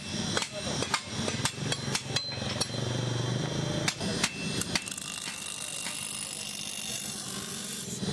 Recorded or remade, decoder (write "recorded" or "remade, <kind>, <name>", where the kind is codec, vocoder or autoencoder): recorded